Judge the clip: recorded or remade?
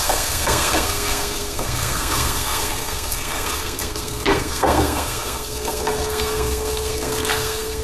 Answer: remade